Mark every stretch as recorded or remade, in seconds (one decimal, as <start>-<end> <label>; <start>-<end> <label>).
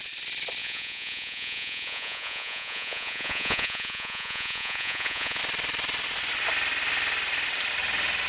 0.0-0.6 recorded; 0.6-5.4 remade; 5.4-8.3 recorded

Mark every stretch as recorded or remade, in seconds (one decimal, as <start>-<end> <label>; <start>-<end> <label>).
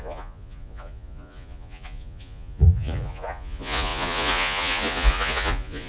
0.0-5.9 remade